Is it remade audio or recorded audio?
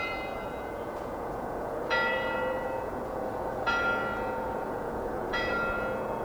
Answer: remade